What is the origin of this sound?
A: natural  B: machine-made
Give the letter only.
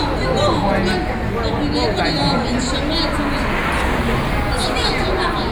A